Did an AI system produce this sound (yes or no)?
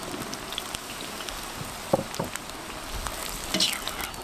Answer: no